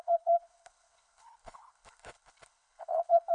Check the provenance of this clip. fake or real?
fake